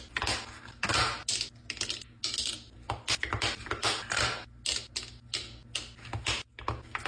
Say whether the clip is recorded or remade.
recorded